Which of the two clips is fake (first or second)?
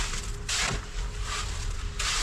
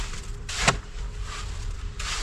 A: second